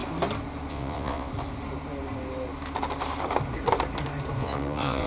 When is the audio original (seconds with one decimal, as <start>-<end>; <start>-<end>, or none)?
0.0-0.7; 1.3-4.4